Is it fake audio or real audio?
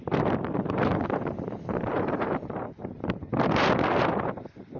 fake